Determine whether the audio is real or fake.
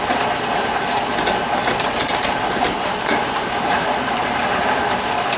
real